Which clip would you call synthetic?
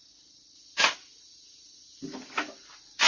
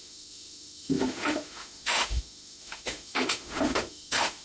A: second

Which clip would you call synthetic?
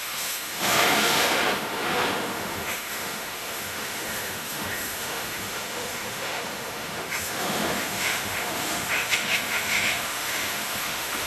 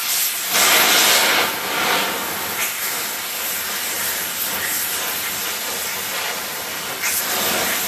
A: first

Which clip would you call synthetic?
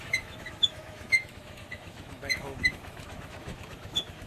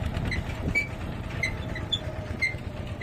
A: first